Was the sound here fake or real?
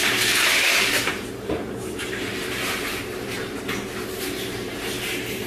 fake